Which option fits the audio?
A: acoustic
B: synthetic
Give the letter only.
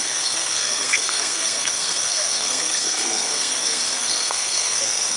B